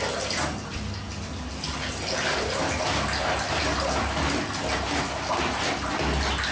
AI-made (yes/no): no